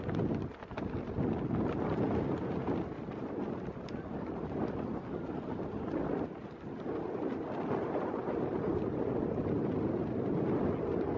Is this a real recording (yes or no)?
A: yes